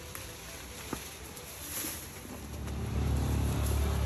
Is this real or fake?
real